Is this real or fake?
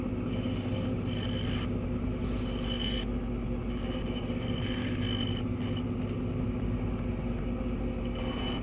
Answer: real